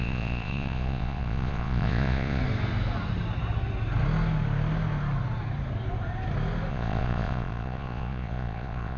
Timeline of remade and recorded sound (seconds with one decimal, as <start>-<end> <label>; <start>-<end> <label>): 0.0-2.4 remade; 2.4-6.7 recorded; 6.7-9.0 remade